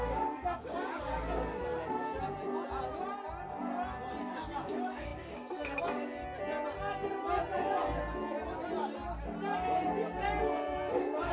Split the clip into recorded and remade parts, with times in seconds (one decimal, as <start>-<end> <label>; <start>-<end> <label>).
0.0-1.6 remade; 1.6-4.2 recorded; 4.2-6.2 remade; 6.2-10.9 recorded; 10.9-11.3 remade